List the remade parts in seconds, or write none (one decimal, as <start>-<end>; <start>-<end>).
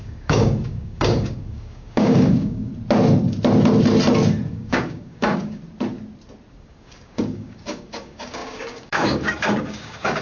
0.0-2.7; 4.5-5.6; 6.5-10.2